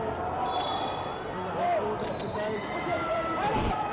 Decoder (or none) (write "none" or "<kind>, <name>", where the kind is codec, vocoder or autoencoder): none